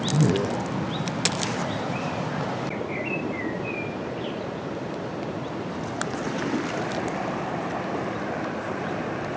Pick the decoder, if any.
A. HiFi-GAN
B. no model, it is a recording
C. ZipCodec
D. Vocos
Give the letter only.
B